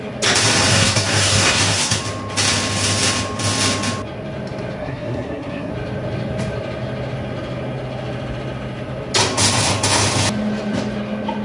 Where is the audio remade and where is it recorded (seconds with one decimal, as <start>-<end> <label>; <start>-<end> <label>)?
0.0-0.7 recorded; 0.7-2.0 remade; 2.0-4.8 recorded; 4.8-5.7 remade; 5.7-11.4 recorded